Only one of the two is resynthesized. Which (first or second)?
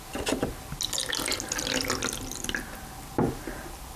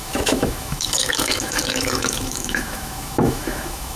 second